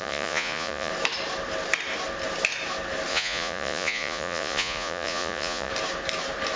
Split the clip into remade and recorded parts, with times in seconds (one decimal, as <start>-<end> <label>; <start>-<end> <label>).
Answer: 0.0-0.9 remade; 0.9-3.1 recorded; 3.1-5.7 remade; 5.7-6.6 recorded